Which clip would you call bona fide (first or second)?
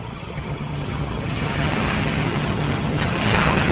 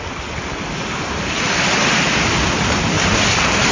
second